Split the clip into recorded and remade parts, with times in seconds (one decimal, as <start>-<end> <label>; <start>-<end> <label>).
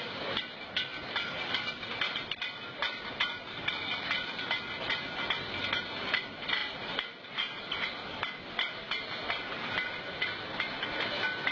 0.0-11.5 recorded